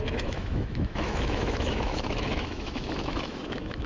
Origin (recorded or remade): remade